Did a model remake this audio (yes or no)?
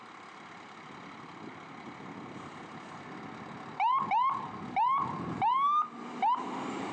no